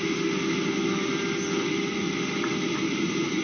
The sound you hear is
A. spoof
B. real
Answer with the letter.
B